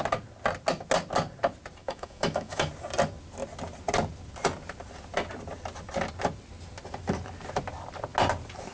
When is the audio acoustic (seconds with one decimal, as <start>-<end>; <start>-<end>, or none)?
0.0-1.8; 2.7-8.7